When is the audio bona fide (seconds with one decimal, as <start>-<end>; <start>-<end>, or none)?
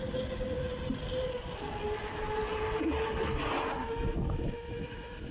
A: 0.0-3.8